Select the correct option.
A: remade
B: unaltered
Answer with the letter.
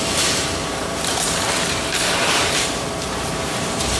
A